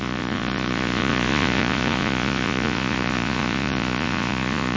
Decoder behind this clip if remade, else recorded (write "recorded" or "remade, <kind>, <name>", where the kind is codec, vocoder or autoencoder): remade, vocoder, Vocos